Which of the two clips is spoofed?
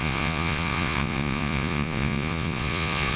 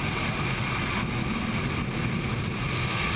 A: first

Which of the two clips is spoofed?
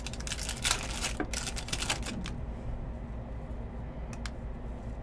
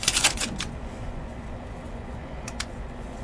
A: second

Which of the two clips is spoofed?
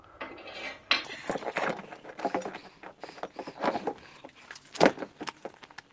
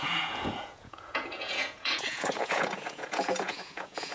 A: second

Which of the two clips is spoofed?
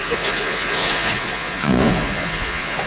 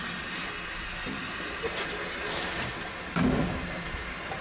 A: first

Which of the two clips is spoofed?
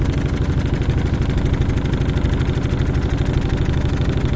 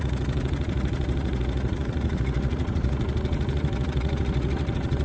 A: second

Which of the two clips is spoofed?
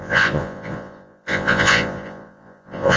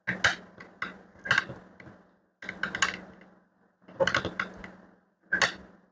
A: first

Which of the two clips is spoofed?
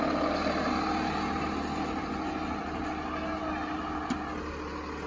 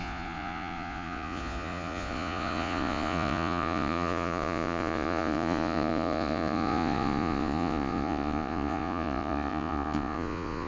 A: second